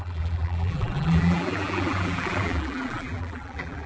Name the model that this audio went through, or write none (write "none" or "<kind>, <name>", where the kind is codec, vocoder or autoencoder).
vocoder, BigVGAN v2